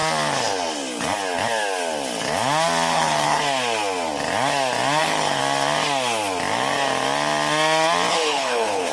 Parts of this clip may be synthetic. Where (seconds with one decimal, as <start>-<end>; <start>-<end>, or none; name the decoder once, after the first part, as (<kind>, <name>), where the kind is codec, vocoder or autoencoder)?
2.9-3.4 (codec, HILCodec); 5.0-5.4; 8.1-8.9